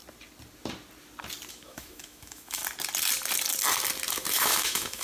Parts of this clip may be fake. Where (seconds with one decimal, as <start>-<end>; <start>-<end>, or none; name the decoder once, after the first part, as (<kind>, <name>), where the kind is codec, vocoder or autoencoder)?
1.5-2.6 (autoencoder, DAC-VAE); 4.1-5.0